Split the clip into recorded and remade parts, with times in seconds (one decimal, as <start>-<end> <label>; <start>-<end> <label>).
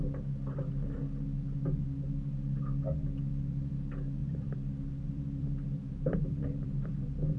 0.0-4.2 recorded; 4.2-7.4 remade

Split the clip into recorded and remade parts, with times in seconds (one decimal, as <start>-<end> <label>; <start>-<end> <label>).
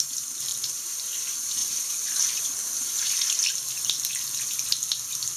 0.0-0.5 recorded; 0.5-1.1 remade; 1.1-1.6 recorded; 1.6-2.4 remade; 2.4-5.4 recorded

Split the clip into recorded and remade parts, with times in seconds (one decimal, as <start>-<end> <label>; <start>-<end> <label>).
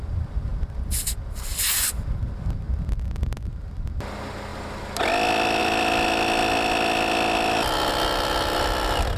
0.0-9.2 recorded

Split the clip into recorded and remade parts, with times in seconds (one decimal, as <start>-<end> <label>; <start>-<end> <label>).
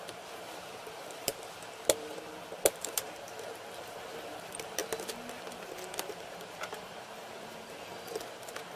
0.0-1.3 remade; 1.3-2.7 recorded; 2.7-4.8 remade; 4.8-6.1 recorded; 6.1-8.8 remade